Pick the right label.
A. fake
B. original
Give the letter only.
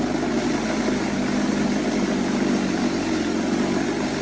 B